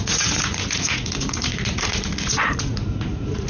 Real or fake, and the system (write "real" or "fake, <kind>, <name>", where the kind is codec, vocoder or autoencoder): fake, vocoder, Vocos